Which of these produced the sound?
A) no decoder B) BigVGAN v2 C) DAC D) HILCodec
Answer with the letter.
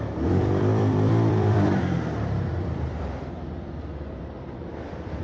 B